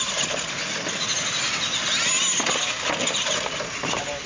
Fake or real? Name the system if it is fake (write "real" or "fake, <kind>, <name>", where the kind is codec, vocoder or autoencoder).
real